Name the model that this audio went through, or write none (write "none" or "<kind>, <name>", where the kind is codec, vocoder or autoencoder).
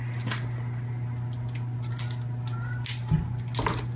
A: none